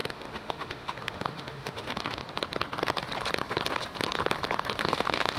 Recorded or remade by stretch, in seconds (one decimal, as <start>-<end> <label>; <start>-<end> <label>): 0.0-2.2 remade; 2.2-4.8 recorded; 4.8-5.4 remade